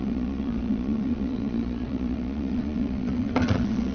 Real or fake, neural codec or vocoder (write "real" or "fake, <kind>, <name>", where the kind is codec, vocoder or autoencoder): fake, vocoder, Vocos